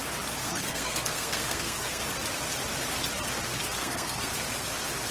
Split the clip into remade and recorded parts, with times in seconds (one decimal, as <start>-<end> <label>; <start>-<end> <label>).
0.0-0.4 recorded; 0.4-2.0 remade; 2.0-3.8 recorded; 3.8-4.3 remade; 4.3-5.1 recorded